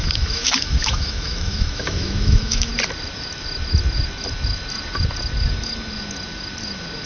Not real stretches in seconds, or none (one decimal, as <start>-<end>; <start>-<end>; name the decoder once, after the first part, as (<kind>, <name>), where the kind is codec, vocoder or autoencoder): 0.0-2.7 (autoencoder, DAC-VAE)